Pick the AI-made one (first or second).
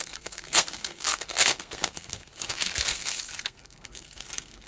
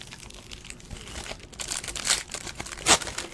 first